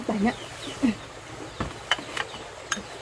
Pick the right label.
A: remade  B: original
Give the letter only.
A